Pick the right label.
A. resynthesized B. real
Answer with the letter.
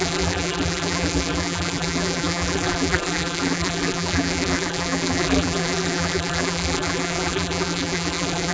A